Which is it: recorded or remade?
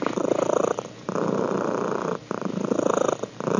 recorded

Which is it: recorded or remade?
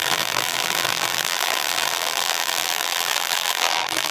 remade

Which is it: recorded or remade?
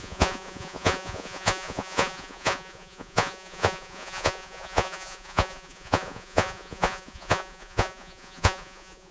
remade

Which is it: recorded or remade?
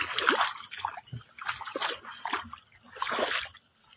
recorded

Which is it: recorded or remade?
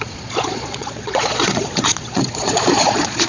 remade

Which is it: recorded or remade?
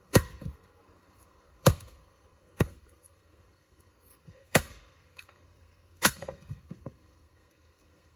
remade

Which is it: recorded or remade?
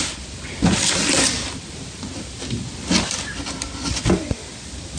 recorded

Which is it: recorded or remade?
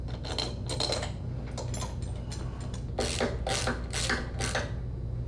recorded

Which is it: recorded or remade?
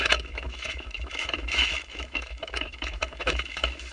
remade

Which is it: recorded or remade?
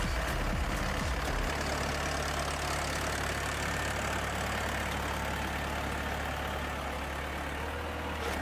recorded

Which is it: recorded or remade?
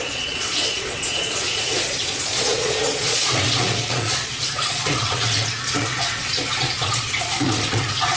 remade